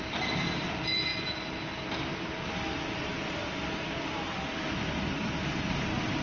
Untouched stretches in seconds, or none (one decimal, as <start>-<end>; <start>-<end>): 1.1-2.0